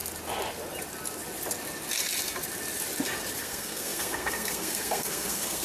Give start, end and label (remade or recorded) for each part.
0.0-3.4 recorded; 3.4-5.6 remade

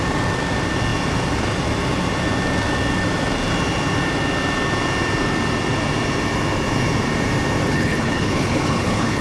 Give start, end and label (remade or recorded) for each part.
0.0-7.6 recorded; 7.6-9.2 remade